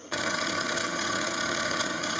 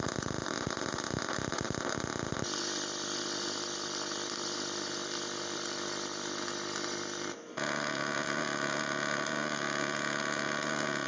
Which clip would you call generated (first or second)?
first